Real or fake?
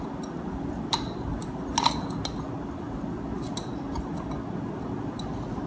real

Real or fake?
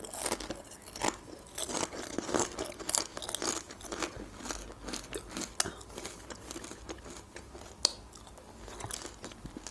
real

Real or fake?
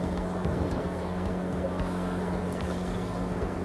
fake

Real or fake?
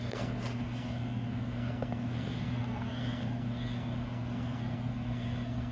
fake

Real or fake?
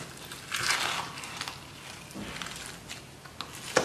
real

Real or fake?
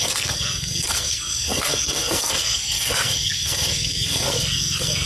fake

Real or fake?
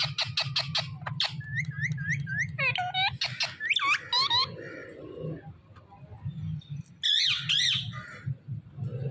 real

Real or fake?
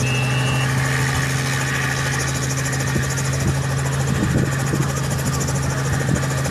real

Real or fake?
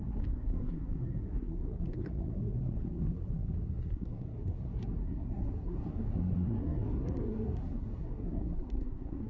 fake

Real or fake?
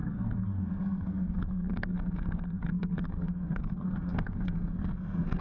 fake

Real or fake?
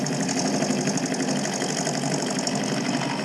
real